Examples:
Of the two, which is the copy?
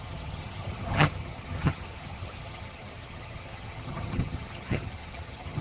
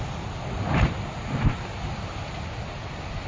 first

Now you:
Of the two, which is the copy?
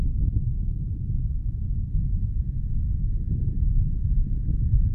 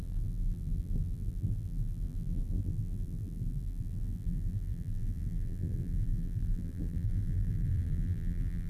second